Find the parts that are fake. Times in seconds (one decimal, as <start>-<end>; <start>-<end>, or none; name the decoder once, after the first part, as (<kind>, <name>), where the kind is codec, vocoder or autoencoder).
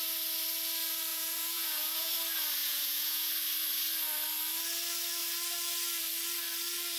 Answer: 1.1-2.1 (vocoder, Vocos); 2.6-3.3